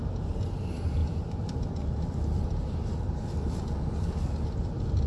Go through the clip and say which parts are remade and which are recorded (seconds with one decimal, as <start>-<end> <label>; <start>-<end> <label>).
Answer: 0.0-5.1 recorded